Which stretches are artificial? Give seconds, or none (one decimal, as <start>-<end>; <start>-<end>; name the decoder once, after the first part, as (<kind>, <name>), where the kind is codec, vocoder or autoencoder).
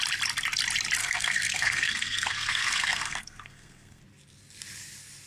1.0-4.0 (codec, SNAC)